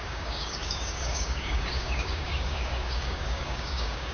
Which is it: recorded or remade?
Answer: remade